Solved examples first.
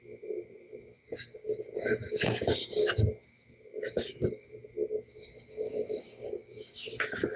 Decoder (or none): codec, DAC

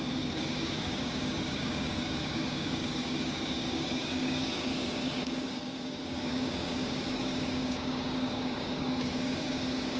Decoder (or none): codec, DAC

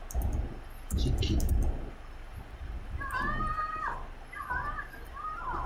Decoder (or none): none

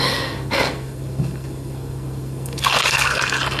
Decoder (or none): codec, SNAC